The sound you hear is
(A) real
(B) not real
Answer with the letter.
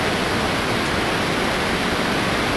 A